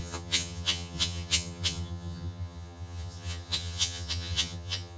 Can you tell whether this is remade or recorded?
remade